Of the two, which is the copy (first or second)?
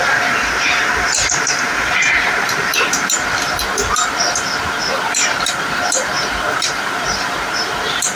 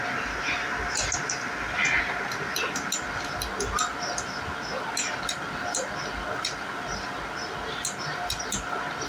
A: first